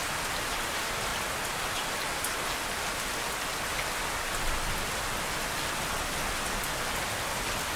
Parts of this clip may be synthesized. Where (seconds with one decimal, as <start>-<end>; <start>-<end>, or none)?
none